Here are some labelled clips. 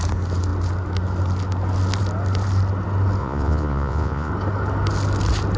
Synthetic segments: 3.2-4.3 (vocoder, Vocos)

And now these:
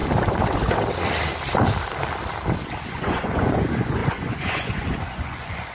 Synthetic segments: 2.9-5.7 (vocoder, Vocos)

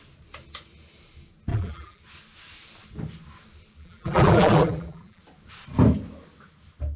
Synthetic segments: 1.5-2.0 (vocoder, BigVGAN v2); 3.8-5.2

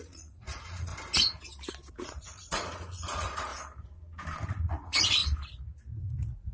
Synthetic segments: 0.0-0.9 (vocoder, Vocos); 1.9-3.5; 4.5-5.2; 6.0-6.5

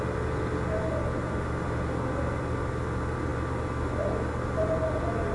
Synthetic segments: none

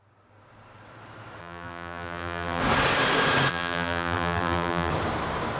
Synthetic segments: 1.4-2.6 (vocoder, BigVGAN v2); 3.5-4.9

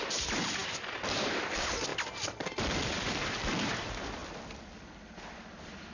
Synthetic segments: 0.0-1.9 (vocoder, BigVGAN v2); 2.6-5.9

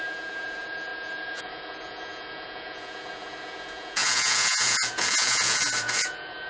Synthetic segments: 0.0-6.5 (vocoder, Vocos)